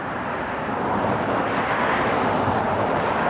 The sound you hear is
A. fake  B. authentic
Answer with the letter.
A